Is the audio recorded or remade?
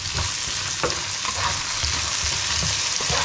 recorded